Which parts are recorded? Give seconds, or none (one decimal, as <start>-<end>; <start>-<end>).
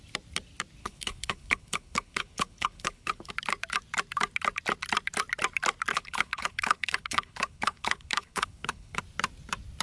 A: 0.0-0.8; 3.3-5.9; 9.0-9.8